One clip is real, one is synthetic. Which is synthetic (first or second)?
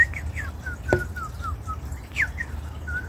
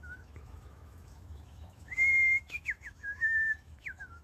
second